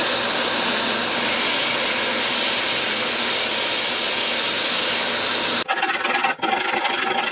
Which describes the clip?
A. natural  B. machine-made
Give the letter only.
A